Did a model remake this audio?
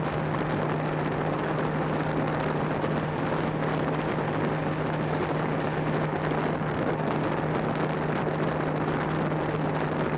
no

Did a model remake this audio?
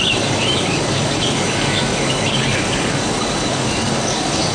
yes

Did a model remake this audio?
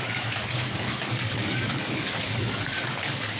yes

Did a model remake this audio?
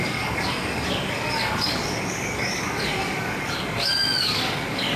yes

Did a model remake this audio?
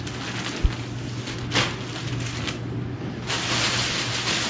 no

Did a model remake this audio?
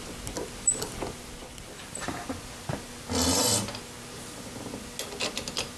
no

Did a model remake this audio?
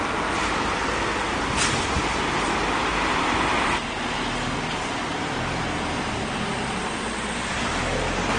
no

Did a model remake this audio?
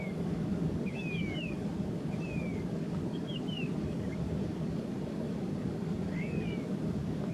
yes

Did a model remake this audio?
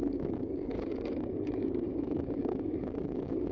yes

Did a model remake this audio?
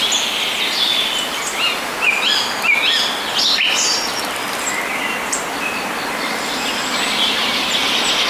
no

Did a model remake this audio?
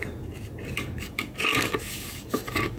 yes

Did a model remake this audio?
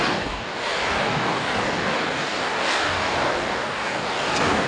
yes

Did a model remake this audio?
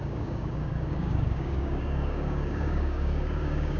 yes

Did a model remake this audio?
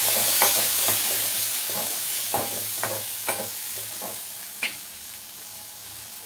yes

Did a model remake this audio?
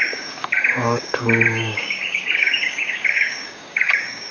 yes